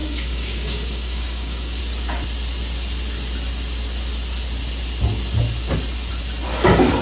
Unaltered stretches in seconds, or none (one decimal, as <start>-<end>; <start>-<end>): 1.8-7.0